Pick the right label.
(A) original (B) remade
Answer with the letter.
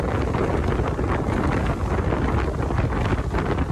A